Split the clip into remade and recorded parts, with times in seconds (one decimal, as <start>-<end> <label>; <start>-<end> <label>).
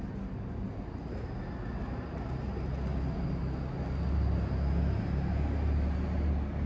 0.0-6.7 recorded